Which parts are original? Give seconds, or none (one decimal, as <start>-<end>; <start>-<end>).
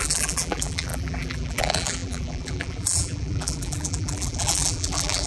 none